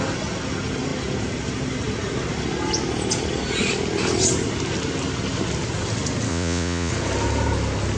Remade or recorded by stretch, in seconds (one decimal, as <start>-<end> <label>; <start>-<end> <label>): 0.0-6.3 recorded; 6.3-6.9 remade; 6.9-8.0 recorded

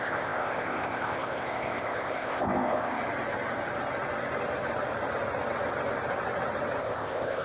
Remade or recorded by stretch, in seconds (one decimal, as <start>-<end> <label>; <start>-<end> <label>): 0.0-3.0 remade; 3.0-6.8 recorded; 6.8-7.4 remade

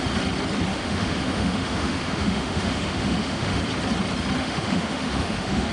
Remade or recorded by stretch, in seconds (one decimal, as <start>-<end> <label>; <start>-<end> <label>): 0.0-0.7 recorded; 0.7-3.6 remade; 3.6-4.4 recorded; 4.4-5.7 remade

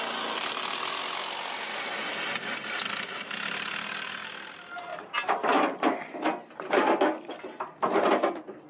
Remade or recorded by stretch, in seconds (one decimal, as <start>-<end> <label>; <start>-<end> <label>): 0.0-4.9 recorded; 4.9-5.6 remade; 5.6-8.7 recorded

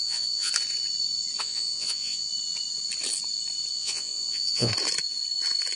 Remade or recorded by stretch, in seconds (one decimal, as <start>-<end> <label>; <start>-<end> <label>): 0.0-0.5 remade; 0.5-1.4 recorded; 1.4-2.3 remade; 2.3-3.7 recorded; 3.7-4.7 remade; 4.7-5.8 recorded

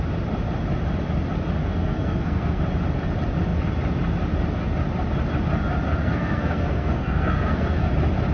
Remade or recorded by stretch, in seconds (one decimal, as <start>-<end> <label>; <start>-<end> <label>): 0.0-1.6 recorded; 1.6-2.6 remade; 2.6-6.0 recorded; 6.0-7.9 remade; 7.9-8.3 recorded

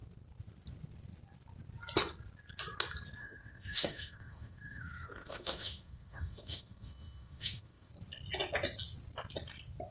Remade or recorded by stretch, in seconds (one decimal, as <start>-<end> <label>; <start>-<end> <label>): 0.0-3.2 recorded; 3.2-7.9 remade; 7.9-9.9 recorded